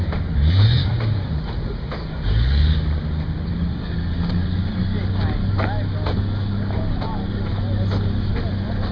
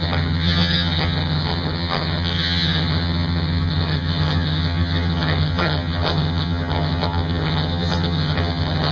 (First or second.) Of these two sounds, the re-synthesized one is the second